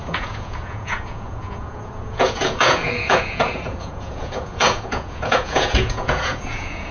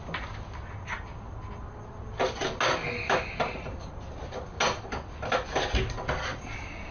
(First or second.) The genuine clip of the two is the second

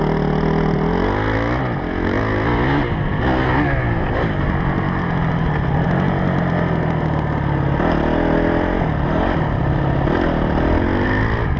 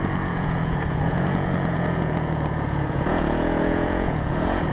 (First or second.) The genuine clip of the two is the first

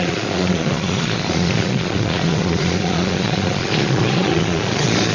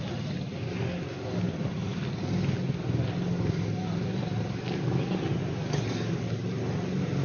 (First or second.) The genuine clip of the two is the second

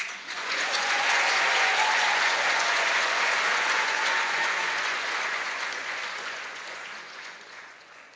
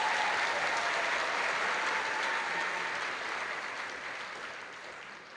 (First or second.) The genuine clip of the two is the second